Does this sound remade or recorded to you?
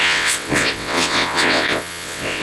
remade